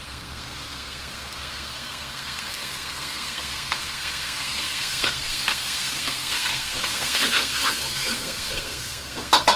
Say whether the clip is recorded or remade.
remade